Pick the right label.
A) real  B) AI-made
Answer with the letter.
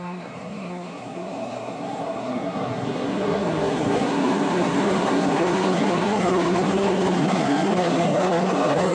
B